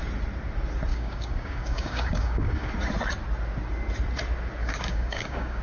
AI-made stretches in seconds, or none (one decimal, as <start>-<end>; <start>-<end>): 0.9-2.7; 4.6-5.6